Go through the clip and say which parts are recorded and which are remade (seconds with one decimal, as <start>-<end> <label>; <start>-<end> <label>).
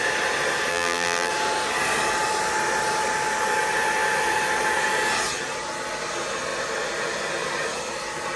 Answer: 0.0-0.7 recorded; 0.7-1.3 remade; 1.3-8.4 recorded